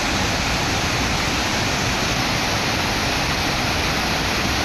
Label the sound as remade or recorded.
recorded